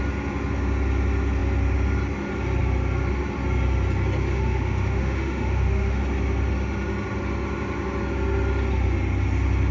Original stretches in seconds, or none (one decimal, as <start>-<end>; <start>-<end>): 0.0-4.3; 6.0-9.7